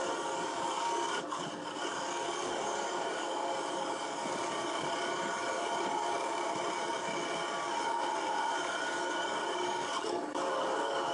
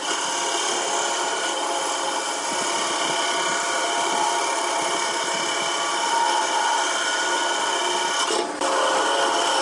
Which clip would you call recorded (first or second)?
second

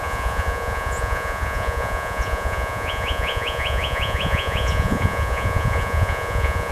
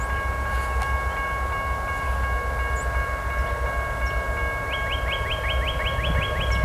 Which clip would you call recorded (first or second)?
second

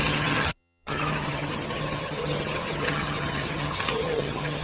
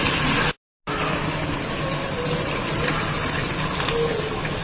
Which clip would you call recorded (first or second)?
second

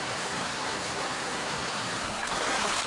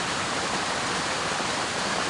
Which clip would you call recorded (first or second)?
second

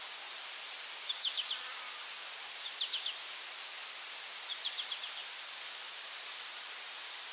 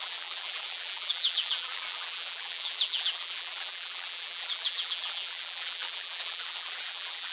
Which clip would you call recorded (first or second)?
first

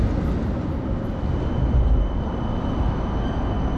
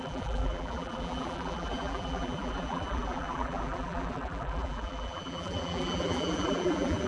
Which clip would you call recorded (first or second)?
first